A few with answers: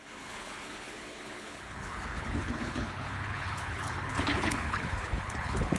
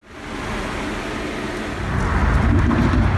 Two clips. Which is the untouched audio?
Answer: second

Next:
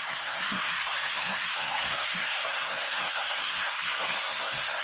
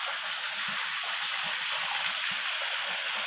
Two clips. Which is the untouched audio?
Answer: second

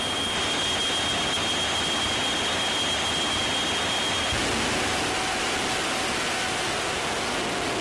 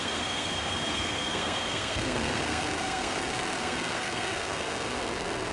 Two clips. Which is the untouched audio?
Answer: first